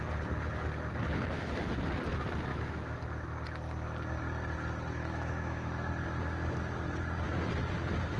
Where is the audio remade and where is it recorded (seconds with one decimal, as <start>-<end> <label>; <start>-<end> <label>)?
0.0-2.5 recorded; 2.5-3.0 remade; 3.0-5.0 recorded; 5.0-5.9 remade; 5.9-8.2 recorded